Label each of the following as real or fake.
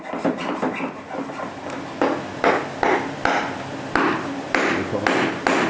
real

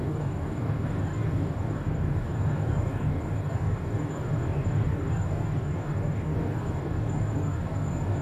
fake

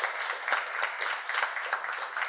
real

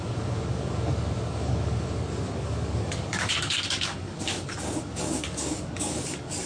fake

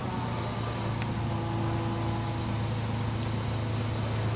real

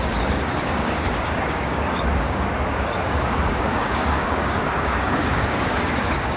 fake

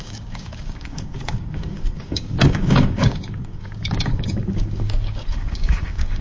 fake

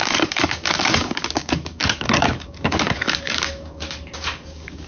fake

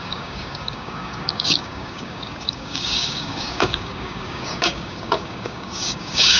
fake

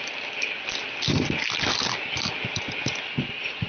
real